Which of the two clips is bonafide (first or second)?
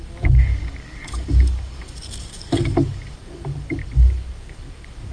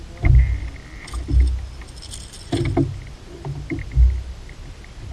second